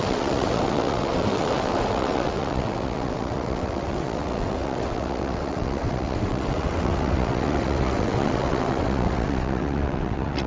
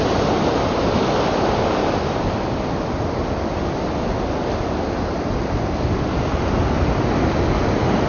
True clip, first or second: second